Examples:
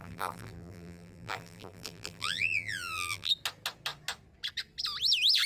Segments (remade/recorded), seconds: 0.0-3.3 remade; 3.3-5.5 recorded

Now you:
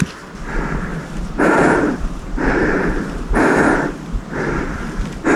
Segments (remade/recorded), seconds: 0.0-0.9 recorded; 0.9-4.1 remade; 4.1-5.4 recorded

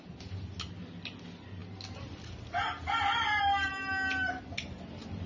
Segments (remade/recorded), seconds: 0.0-5.3 recorded

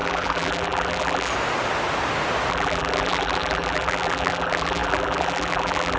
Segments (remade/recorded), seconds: 0.0-1.3 remade; 1.3-2.5 recorded; 2.5-6.0 remade

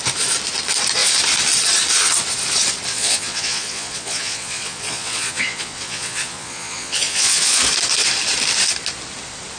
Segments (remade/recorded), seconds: 0.0-2.9 recorded; 2.9-7.6 remade; 7.6-9.6 recorded

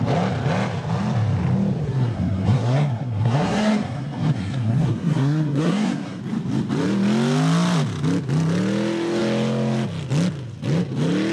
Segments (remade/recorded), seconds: 0.0-1.8 recorded; 1.8-6.2 remade; 6.2-11.3 recorded

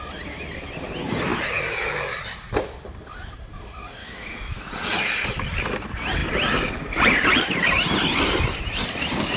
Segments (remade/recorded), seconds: 0.0-4.0 recorded; 4.0-4.7 remade; 4.7-9.4 recorded

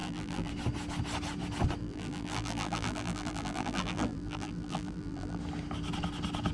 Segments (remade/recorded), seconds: 0.0-0.5 remade; 0.5-1.8 recorded; 1.8-5.4 remade; 5.4-6.5 recorded